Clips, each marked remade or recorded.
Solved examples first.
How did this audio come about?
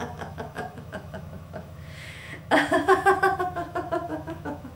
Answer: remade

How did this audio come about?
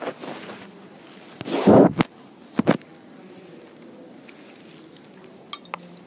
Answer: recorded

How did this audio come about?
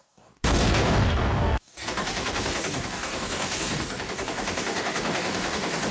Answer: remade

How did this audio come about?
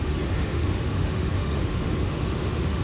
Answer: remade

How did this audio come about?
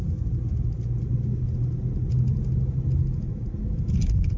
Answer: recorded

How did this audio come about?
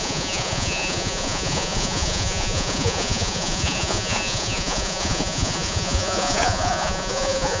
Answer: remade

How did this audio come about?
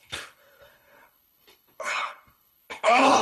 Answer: remade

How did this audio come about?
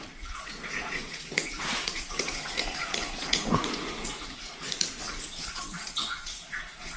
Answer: remade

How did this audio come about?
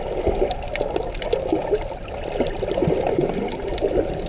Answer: recorded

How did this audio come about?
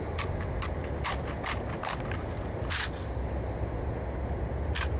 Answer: recorded